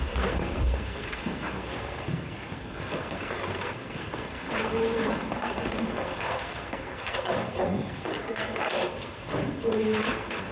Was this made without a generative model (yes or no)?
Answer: no